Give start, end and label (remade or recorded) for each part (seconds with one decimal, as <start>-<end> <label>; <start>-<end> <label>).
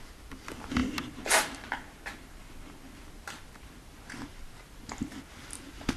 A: 0.0-6.0 recorded